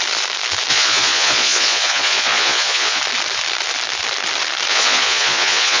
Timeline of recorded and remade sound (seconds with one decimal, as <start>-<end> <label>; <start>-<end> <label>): 0.0-0.7 recorded; 0.7-3.0 remade; 3.0-4.7 recorded; 4.7-5.8 remade